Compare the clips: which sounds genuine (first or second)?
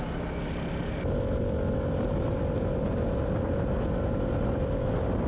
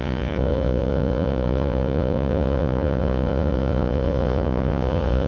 first